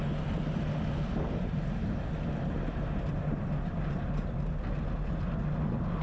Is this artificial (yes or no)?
no